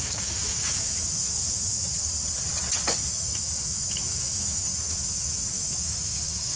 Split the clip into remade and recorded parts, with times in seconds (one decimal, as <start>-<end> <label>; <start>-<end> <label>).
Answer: 0.0-1.9 remade; 1.9-3.0 recorded; 3.0-6.6 remade